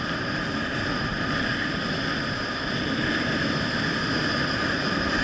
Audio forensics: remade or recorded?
recorded